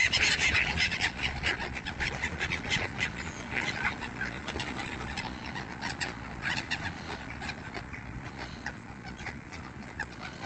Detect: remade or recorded remade